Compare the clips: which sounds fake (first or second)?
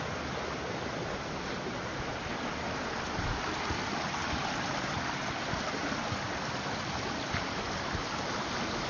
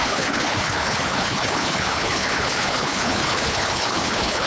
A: second